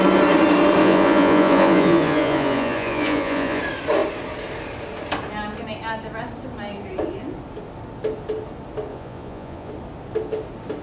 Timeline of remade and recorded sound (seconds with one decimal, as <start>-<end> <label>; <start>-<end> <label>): 0.0-0.8 recorded; 0.8-3.6 remade; 3.6-8.9 recorded; 8.9-9.7 remade; 9.7-10.8 recorded